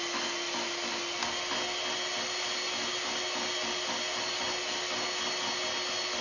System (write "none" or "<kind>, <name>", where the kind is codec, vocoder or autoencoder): none